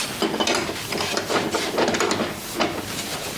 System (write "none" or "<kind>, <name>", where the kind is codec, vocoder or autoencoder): none